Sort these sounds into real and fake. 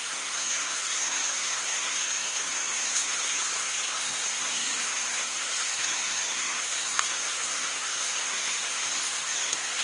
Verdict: fake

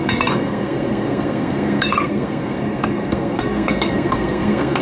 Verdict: fake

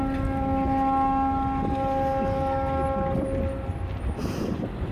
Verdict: real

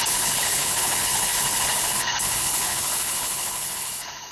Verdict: fake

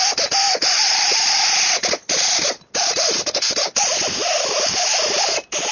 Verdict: real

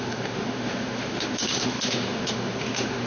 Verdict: fake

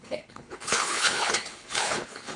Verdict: fake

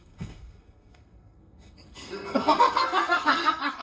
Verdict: fake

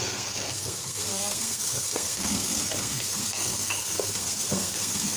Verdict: fake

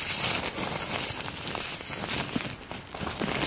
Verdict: real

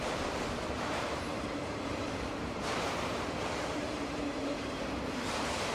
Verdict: fake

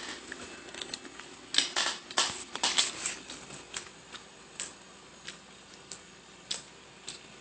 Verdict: real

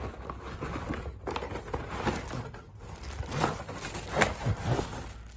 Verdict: real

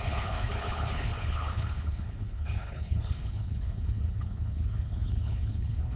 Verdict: fake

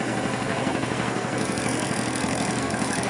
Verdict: fake